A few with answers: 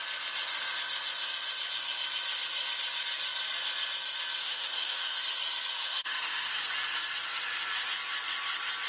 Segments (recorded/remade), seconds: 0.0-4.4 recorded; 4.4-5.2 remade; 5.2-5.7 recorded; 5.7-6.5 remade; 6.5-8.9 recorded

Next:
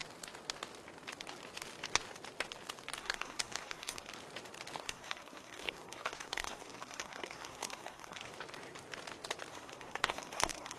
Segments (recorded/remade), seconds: 0.0-3.0 recorded; 3.0-4.1 remade; 4.1-4.8 recorded; 4.8-8.3 remade; 8.3-9.5 recorded; 9.5-10.8 remade

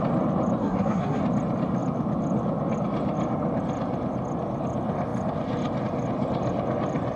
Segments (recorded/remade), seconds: 0.0-0.6 recorded; 0.6-1.2 remade; 1.2-7.2 recorded

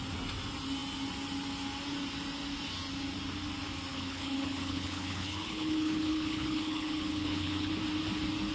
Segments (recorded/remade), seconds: 0.0-3.9 recorded; 3.9-7.7 remade; 7.7-8.5 recorded

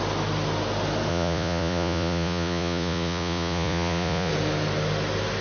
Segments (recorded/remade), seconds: 0.0-1.1 recorded; 1.1-4.3 remade; 4.3-5.4 recorded

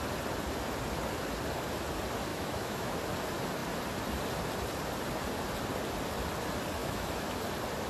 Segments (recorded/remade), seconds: 0.0-2.3 recorded; 2.3-3.0 remade; 3.0-6.8 recorded; 6.8-7.4 remade; 7.4-7.9 recorded

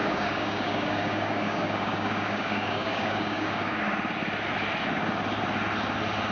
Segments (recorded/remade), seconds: 0.0-3.8 remade; 3.8-6.3 recorded